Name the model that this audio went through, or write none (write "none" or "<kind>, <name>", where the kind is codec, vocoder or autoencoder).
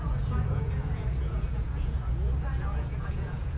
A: vocoder, Vocos